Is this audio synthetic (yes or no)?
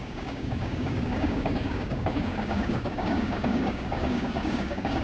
yes